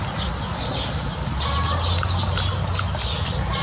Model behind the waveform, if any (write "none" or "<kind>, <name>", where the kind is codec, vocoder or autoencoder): none